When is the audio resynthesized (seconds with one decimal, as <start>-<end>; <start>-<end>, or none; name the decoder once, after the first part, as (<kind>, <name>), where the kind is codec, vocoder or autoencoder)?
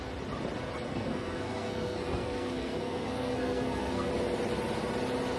0.9-4.1 (codec, SNAC)